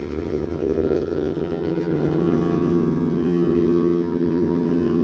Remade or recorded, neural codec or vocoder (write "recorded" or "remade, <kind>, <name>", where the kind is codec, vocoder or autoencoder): remade, vocoder, HiFi-GAN